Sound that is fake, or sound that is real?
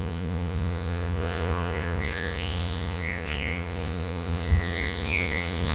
fake